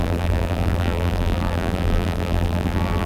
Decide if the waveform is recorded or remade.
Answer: remade